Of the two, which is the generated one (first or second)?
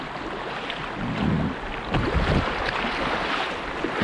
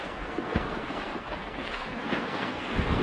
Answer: second